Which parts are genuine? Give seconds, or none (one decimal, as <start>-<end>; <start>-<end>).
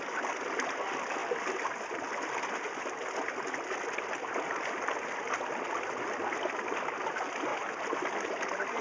0.0-8.8